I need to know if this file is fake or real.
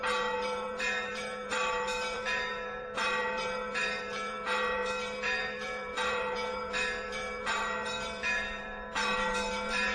fake